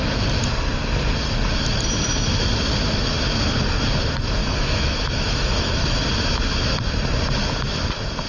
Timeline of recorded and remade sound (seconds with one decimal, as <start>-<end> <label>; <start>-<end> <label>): 0.0-4.4 recorded; 4.4-6.1 remade; 6.1-8.3 recorded